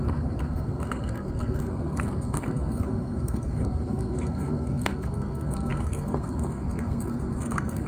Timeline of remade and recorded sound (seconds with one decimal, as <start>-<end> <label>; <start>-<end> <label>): 0.0-7.9 remade